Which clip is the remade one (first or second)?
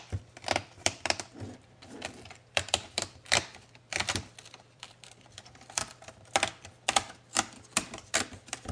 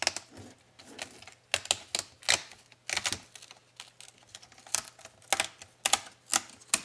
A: first